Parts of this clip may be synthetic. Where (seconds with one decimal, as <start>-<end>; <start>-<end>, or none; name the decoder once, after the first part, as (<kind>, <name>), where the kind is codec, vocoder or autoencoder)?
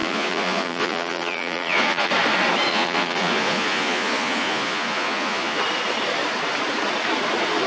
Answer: 0.0-2.1 (vocoder, Vocos); 2.7-5.6